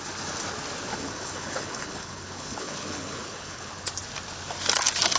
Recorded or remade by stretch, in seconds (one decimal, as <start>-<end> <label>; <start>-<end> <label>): 0.0-0.9 recorded; 0.9-3.7 remade; 3.7-5.2 recorded